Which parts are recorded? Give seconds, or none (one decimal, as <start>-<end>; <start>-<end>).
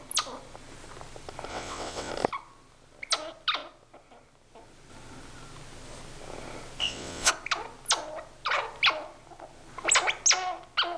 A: 0.0-1.5; 2.1-6.8; 7.3-11.0